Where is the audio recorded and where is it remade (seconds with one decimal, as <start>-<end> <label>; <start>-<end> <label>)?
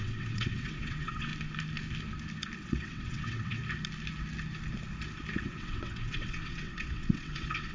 0.0-1.3 remade; 1.3-2.6 recorded; 2.6-3.6 remade; 3.6-5.4 recorded; 5.4-7.7 remade